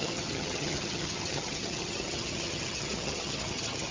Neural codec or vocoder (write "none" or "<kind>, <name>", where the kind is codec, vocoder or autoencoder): vocoder, HiFi-GAN